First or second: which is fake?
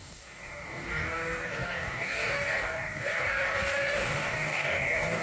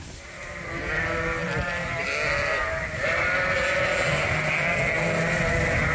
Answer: first